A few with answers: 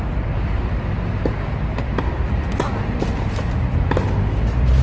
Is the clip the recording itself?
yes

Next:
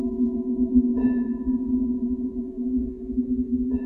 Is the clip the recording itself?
no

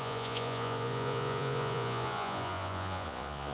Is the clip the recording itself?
no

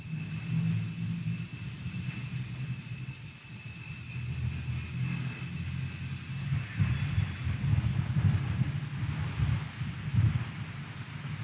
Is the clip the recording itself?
yes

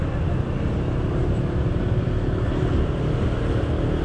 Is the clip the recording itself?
yes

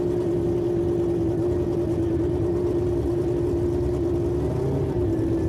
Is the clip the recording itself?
yes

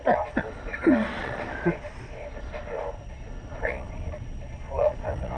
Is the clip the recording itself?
no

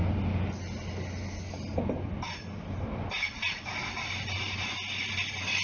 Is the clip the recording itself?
yes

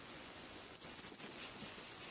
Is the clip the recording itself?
no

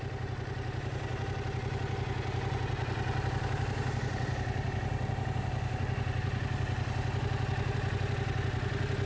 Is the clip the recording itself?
yes